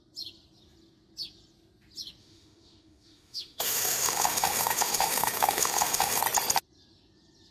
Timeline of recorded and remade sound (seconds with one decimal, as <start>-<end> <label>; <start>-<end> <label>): 0.0-2.2 recorded; 2.2-6.2 remade; 6.2-7.5 recorded